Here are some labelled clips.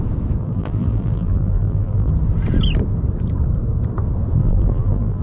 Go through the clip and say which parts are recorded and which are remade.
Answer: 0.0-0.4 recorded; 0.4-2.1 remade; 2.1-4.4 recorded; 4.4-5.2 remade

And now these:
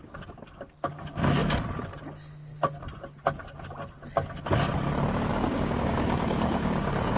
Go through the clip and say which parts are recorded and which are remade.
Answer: 0.0-5.3 recorded; 5.3-7.2 remade

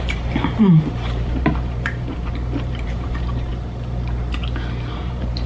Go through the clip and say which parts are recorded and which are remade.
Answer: 0.0-3.5 remade; 3.5-5.0 recorded; 5.0-5.5 remade

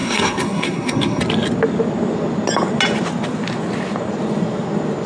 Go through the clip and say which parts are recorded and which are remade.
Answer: 0.0-1.2 remade; 1.2-5.1 recorded

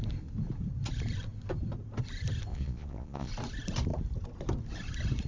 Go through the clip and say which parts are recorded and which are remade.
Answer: 0.0-2.5 recorded; 2.5-3.3 remade; 3.3-5.3 recorded

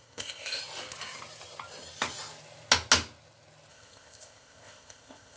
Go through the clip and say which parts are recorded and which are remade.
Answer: 0.0-0.6 remade; 0.6-3.7 recorded; 3.7-5.4 remade

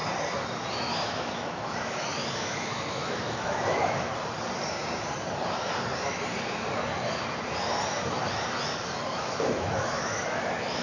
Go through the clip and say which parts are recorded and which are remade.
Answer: 0.0-0.7 recorded; 0.7-4.1 remade; 4.1-9.1 recorded; 9.1-10.8 remade